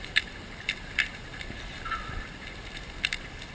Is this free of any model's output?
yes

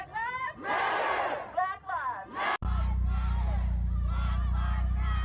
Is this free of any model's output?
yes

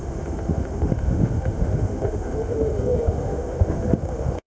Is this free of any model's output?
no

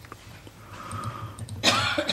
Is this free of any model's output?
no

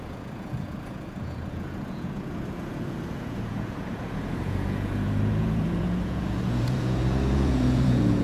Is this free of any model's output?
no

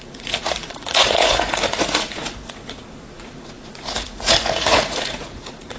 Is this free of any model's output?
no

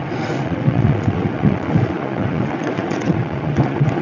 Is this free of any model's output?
no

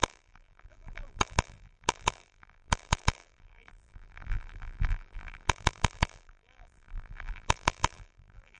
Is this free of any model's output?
no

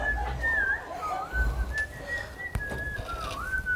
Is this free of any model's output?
yes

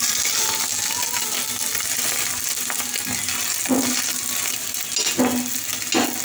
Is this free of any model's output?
yes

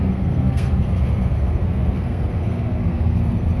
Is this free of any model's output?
no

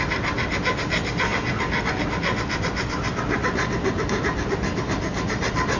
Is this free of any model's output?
yes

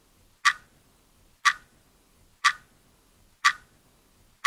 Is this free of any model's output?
yes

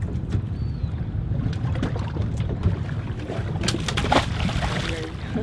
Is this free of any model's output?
yes